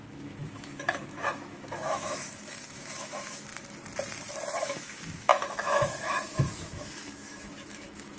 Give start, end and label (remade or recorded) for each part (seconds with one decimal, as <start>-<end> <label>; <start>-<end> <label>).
0.0-3.5 remade; 3.5-4.6 recorded; 4.6-8.2 remade